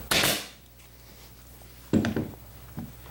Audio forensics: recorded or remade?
recorded